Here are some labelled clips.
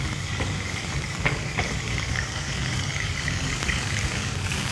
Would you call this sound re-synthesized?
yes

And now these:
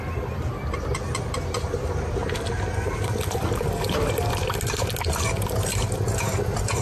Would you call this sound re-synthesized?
no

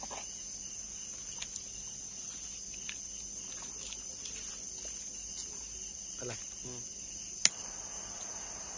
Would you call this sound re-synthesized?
no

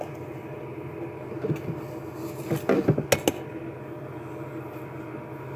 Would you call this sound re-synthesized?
no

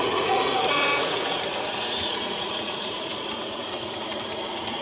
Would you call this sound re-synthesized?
yes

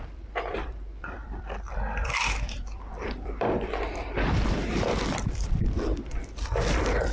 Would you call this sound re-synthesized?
yes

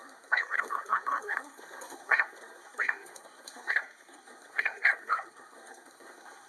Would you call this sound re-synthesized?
yes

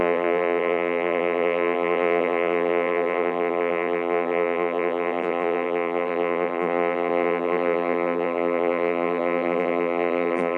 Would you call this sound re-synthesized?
yes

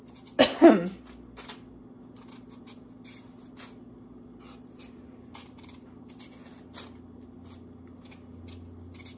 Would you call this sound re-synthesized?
no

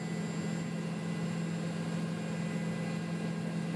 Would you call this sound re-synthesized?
no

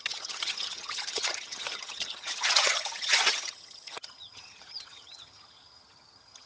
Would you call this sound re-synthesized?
yes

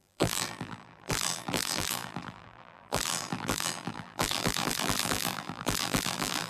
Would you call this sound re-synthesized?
yes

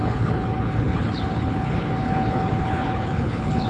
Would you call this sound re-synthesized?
yes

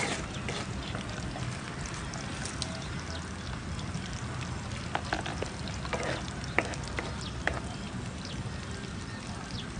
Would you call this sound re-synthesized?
no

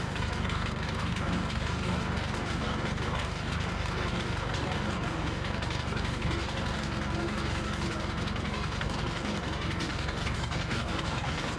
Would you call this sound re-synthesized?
yes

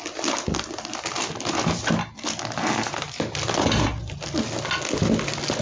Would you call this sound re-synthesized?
no